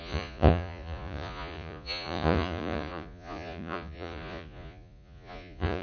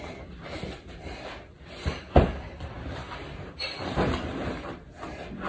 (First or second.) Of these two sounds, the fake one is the first